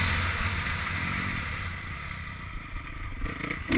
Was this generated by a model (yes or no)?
no